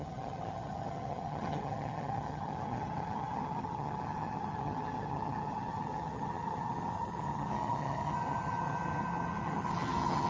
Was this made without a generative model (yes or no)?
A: no